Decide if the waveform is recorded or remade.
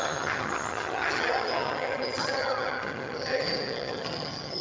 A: remade